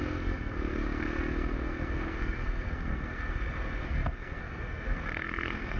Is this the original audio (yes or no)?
no